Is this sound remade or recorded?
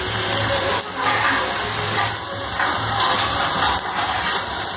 recorded